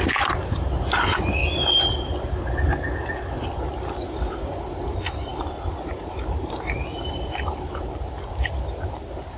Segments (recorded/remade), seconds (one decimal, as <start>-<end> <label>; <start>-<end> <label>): 0.0-9.4 recorded

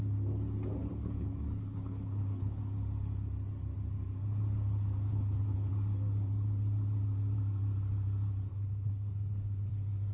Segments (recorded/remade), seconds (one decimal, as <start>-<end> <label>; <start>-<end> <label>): 0.0-0.8 recorded; 0.8-2.6 remade; 2.6-5.1 recorded; 5.1-5.7 remade; 5.7-8.5 recorded; 8.5-9.7 remade; 9.7-10.1 recorded